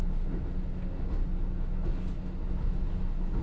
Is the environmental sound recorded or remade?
recorded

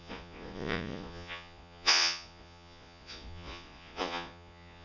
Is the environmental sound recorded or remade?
remade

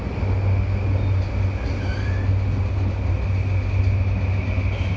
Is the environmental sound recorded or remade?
recorded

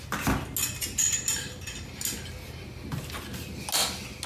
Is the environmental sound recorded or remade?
recorded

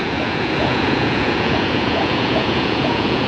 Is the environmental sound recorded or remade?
remade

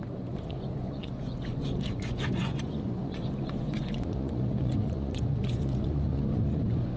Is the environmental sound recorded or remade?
remade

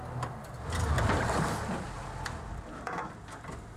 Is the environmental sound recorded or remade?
recorded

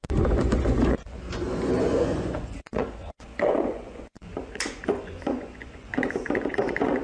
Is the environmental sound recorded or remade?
remade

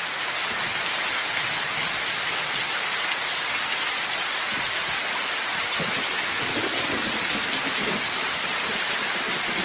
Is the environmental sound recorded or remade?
recorded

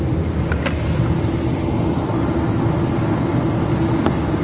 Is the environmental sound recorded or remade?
recorded